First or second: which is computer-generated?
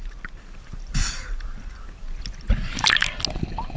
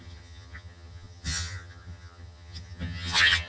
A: second